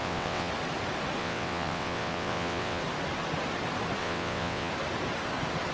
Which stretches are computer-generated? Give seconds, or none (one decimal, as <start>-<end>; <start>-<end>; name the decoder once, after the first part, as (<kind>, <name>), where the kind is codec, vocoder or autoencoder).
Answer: 0.0-0.5 (vocoder, WaveNeXt); 1.2-2.8; 4.0-4.7